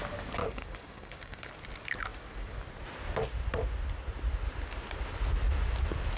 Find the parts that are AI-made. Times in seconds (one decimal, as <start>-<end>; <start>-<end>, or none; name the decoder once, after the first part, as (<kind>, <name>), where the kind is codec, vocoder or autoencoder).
0.4-1.5 (codec, DAC)